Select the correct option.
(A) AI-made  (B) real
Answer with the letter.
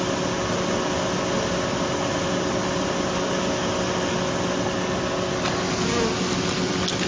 B